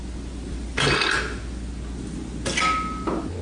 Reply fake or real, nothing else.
real